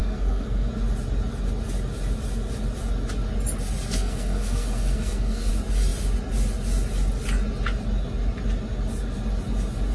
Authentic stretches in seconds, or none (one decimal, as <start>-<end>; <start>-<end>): 0.7-3.9; 5.5-9.9